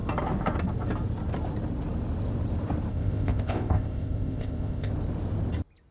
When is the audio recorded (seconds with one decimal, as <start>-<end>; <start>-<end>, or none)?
0.0-2.9; 4.9-5.9